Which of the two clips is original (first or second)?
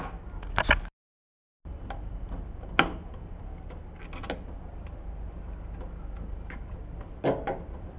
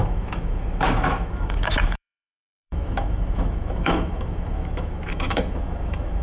first